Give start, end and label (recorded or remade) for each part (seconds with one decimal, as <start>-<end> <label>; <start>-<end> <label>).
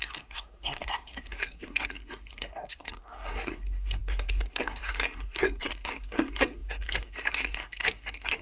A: 0.0-8.4 remade